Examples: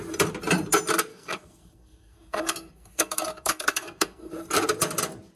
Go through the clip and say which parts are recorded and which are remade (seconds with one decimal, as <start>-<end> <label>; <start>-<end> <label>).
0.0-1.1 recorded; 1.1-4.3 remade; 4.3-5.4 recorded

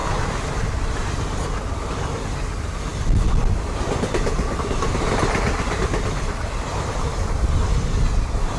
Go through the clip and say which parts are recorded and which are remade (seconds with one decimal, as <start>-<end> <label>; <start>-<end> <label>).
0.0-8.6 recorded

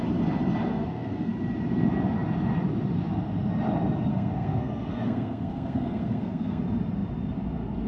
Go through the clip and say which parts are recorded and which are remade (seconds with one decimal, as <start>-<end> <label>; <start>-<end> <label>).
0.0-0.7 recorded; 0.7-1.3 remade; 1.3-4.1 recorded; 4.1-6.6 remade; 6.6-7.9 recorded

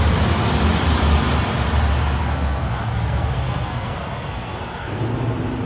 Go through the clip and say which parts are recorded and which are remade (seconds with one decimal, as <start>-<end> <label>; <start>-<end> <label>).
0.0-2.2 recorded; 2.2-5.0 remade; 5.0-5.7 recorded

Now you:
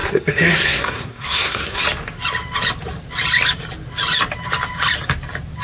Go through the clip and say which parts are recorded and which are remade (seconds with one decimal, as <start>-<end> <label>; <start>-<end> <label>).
0.0-1.8 remade; 1.8-5.6 recorded

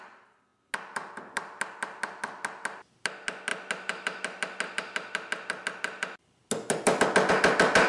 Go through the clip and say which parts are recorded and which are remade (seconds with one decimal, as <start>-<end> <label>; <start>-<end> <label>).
0.0-7.9 recorded